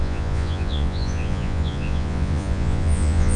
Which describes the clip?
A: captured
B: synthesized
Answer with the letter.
B